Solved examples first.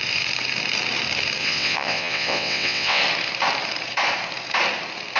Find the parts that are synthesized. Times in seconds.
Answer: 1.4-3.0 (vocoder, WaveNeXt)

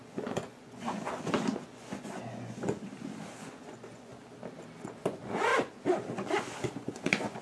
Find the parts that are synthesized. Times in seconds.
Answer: 0.0-2.9 (vocoder, Vocos); 3.4-4.1; 4.8-5.5; 6.7-7.4

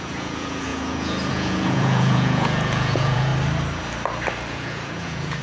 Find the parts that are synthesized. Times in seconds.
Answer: 0.0-3.3 (vocoder, Vocos); 4.5-5.4

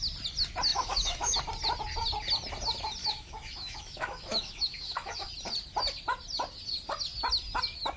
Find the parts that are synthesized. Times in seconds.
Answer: 0.7-1.4 (autoencoder, DAC-VAE); 3.0-5.3

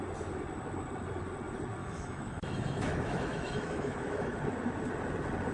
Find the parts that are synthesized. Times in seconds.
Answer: 1.8-4.4 (autoencoder, DAC-VAE)

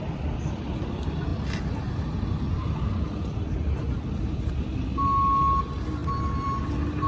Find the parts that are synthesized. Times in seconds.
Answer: 6.0-6.6 (vocoder, BigVGAN v2)

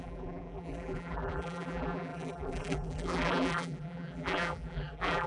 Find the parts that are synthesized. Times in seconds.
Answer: 0.0-5.3 (vocoder, BigVGAN v2)